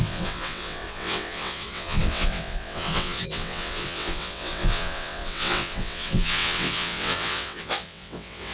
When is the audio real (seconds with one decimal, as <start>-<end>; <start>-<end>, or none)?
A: none